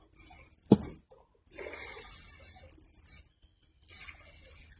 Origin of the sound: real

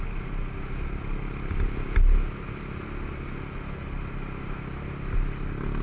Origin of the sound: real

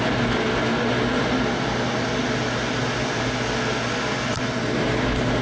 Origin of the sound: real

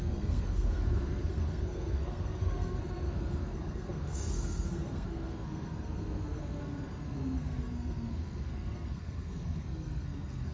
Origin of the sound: fake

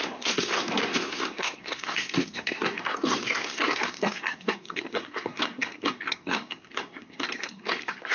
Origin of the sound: fake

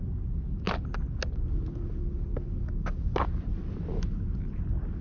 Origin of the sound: real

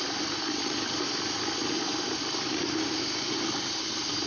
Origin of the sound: real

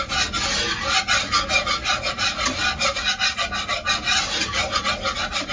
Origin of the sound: real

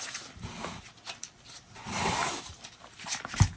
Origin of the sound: real